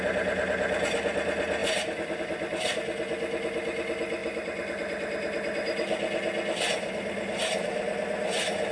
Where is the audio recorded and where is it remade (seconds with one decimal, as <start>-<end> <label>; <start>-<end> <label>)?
0.0-8.7 recorded